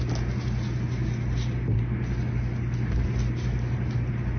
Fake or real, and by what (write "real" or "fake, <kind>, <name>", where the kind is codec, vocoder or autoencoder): real